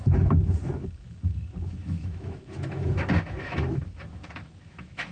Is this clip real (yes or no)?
no